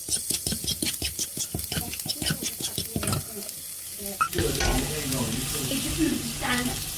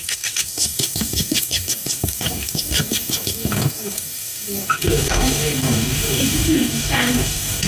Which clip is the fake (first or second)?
second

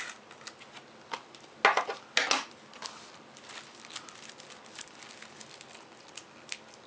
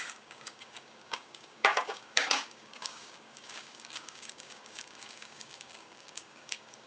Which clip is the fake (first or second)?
second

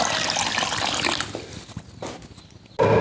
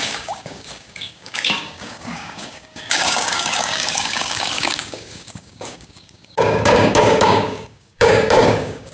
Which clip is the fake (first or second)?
second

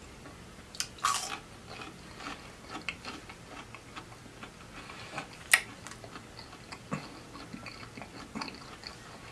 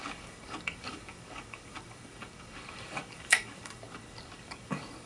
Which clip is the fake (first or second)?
second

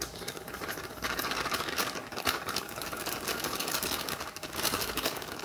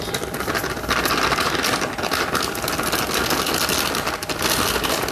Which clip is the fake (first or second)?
first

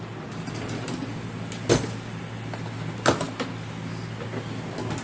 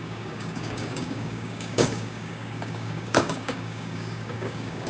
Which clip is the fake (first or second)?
second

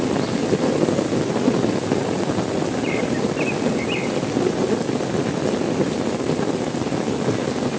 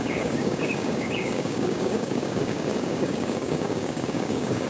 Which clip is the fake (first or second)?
second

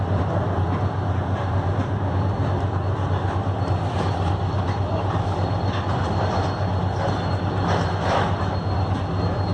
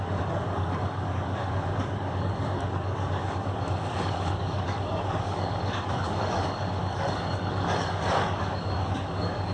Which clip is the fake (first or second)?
second